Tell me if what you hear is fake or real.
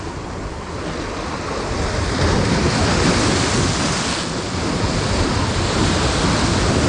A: real